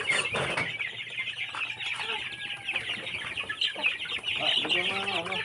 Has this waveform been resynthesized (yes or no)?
no